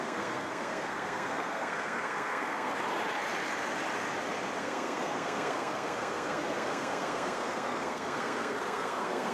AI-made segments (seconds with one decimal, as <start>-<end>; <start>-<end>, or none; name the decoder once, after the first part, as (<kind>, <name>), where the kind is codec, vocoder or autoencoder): 0.0-2.7 (codec, SNAC); 4.6-9.3